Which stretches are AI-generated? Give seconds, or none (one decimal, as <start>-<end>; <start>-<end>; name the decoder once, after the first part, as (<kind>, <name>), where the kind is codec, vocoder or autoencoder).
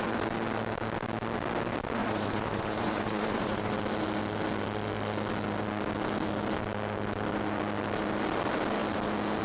2.0-3.7 (vocoder, Vocos)